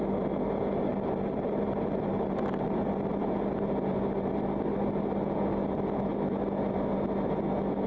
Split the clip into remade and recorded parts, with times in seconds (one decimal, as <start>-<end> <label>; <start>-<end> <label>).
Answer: 0.0-0.9 recorded; 0.9-4.3 remade; 4.3-7.9 recorded